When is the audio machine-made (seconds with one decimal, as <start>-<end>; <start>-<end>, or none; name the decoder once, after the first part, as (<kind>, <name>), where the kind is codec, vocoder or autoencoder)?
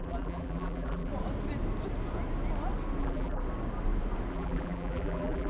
0.0-1.1 (vocoder, BigVGAN v2); 3.0-3.4; 4.3-5.5